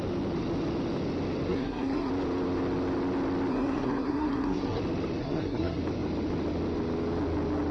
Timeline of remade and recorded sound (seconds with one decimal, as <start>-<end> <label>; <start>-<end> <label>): 0.0-1.5 recorded; 1.5-2.1 remade; 2.1-3.5 recorded; 3.5-4.8 remade; 4.8-5.2 recorded; 5.2-5.8 remade; 5.8-7.7 recorded